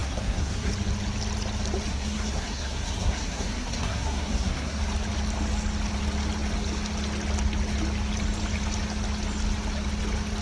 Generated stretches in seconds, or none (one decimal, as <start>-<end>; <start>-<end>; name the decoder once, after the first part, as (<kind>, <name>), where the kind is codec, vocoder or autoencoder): 0.0-0.7 (codec, SNAC); 1.9-4.8